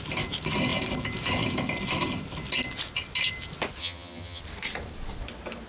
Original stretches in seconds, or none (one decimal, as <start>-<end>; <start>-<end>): 0.0-3.8; 4.4-5.7